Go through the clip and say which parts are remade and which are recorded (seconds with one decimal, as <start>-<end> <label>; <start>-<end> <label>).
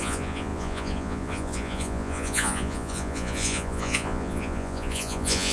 0.0-5.5 remade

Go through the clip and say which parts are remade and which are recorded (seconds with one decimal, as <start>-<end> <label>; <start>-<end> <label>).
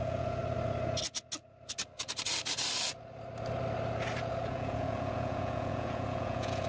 0.0-0.4 remade; 0.4-4.2 recorded; 4.2-6.7 remade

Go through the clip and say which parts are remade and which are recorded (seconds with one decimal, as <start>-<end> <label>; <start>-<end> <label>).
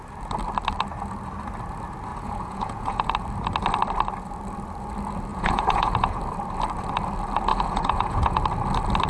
0.0-2.1 recorded; 2.1-3.1 remade; 3.1-5.3 recorded; 5.3-6.2 remade; 6.2-7.5 recorded; 7.5-8.4 remade; 8.4-9.1 recorded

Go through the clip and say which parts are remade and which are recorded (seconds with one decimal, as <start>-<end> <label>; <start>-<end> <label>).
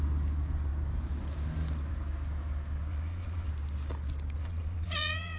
0.0-2.9 recorded; 2.9-3.5 remade; 3.5-4.4 recorded; 4.4-5.4 remade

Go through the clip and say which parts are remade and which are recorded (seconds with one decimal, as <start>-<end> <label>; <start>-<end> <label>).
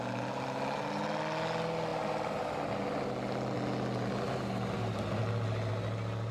0.0-6.3 recorded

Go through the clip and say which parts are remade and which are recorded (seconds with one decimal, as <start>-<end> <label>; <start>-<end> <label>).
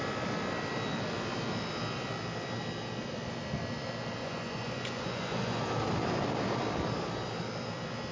0.0-4.2 recorded; 4.2-5.6 remade; 5.6-8.1 recorded